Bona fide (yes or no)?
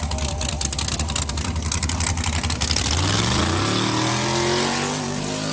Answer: yes